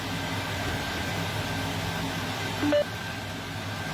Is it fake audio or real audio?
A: real